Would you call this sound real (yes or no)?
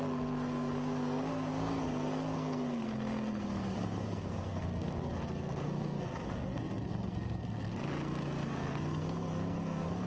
no